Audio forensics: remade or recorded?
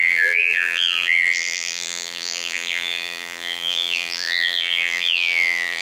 remade